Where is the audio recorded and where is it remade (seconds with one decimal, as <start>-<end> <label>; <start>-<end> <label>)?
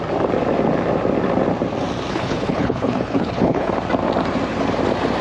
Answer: 0.0-2.1 recorded; 2.1-3.7 remade; 3.7-5.2 recorded